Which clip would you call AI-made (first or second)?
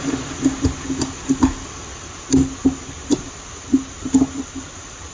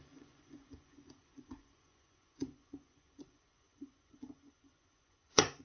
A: second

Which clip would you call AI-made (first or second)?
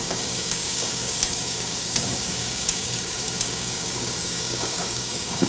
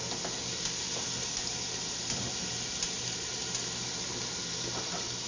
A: first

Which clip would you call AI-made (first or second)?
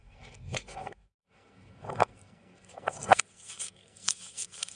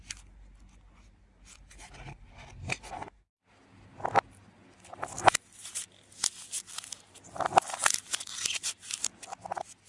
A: first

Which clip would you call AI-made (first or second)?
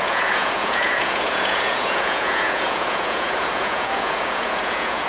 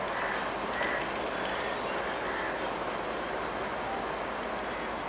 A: first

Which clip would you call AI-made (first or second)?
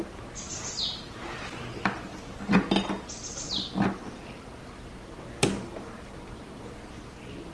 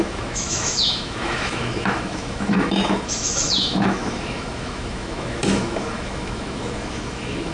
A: second